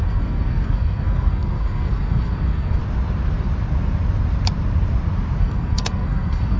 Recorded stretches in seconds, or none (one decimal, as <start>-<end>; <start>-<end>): 2.8-5.4

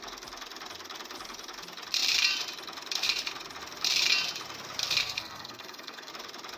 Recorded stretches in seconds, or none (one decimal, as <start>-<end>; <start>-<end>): 0.0-5.0; 6.1-6.6

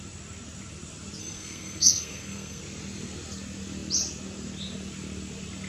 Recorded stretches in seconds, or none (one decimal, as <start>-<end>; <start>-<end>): 0.0-1.2; 2.6-5.7

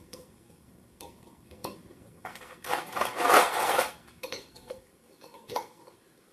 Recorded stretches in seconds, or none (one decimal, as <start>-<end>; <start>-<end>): none

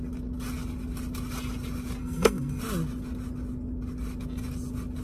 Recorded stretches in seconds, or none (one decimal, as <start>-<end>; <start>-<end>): 0.0-2.0; 2.6-5.0

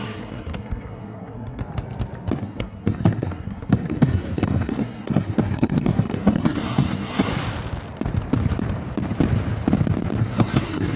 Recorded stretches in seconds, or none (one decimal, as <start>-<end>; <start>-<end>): 1.6-2.4; 7.3-10.2

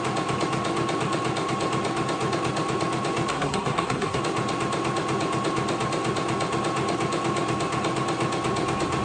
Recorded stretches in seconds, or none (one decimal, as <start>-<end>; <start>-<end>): 0.0-3.3; 4.2-9.0